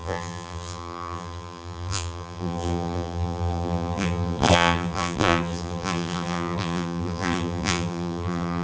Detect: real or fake fake